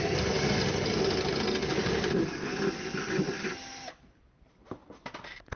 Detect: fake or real real